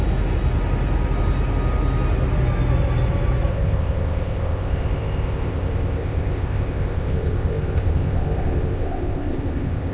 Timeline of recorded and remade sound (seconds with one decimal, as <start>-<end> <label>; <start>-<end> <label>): 0.0-3.5 recorded; 3.5-9.9 remade